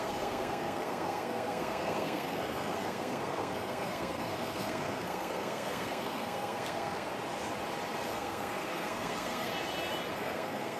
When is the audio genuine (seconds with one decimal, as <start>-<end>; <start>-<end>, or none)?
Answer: 7.1-8.1; 9.5-10.1